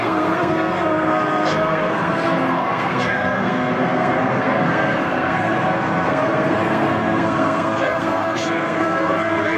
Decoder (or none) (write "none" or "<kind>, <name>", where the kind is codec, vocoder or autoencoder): codec, SNAC